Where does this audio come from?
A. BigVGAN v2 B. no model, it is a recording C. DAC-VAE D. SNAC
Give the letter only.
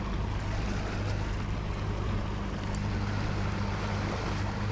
B